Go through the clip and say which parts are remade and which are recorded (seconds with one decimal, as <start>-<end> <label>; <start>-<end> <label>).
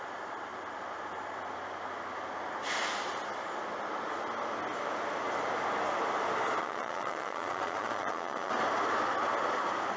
0.0-6.6 recorded; 6.6-8.5 remade; 8.5-10.0 recorded